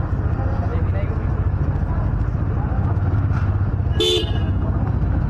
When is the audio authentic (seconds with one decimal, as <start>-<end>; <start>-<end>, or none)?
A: 0.0-5.3